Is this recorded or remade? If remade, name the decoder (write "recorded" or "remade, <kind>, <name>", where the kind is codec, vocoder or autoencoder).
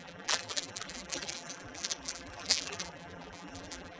remade, vocoder, BigVGAN v2